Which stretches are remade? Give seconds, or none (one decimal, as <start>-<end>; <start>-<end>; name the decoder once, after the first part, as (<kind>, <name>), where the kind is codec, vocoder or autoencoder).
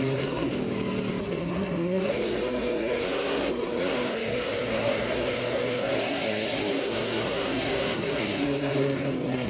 0.0-0.5 (codec, SNAC); 1.2-9.5